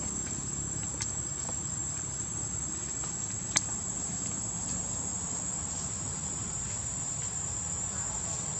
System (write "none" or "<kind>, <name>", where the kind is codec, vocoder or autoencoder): vocoder, BigVGAN v2